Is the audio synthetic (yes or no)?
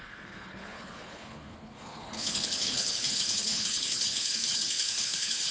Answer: yes